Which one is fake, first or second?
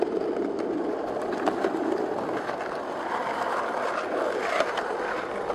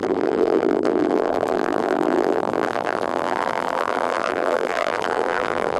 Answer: second